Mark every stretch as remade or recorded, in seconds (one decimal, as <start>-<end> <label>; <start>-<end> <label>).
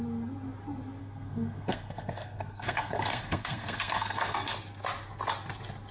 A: 0.0-1.0 recorded; 1.0-4.5 remade; 4.5-5.9 recorded